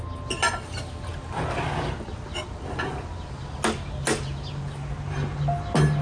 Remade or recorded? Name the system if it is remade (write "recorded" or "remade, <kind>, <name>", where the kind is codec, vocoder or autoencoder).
recorded